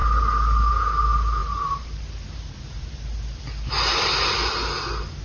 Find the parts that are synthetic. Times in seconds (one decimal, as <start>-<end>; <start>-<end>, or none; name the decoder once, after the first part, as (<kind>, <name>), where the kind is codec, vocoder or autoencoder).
1.4-3.1 (vocoder, BigVGAN v2)